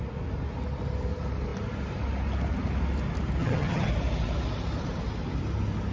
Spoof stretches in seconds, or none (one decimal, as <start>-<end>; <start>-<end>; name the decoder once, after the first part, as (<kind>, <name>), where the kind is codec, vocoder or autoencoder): 3.4-3.9 (vocoder, HiFi-GAN)